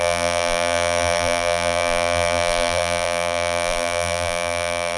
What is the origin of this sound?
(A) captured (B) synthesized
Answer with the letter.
B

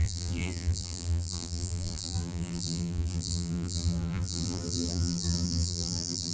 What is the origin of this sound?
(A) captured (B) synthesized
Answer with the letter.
B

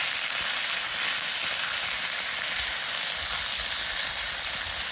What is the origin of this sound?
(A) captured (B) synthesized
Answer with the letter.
A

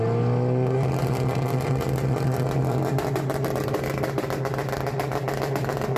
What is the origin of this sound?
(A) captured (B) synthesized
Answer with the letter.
A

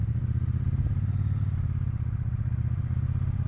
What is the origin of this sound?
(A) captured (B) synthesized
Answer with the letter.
B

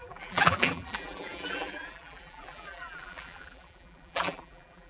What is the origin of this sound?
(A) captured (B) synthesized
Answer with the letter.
B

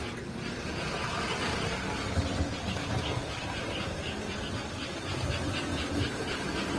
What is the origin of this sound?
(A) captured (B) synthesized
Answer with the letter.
A